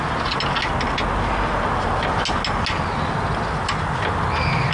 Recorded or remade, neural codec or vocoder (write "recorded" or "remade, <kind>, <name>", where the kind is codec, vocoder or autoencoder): recorded